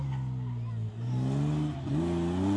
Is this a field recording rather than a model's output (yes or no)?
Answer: yes